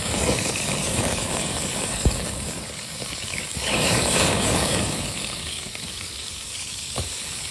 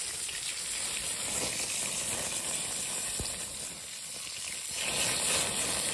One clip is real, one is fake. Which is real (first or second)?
second